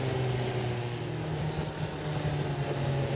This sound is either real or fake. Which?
real